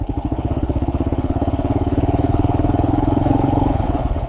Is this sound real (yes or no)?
no